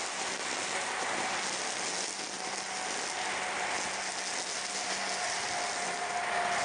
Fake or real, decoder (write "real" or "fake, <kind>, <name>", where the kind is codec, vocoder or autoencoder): real